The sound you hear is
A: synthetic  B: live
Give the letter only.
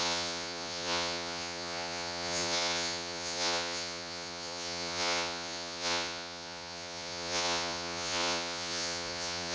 A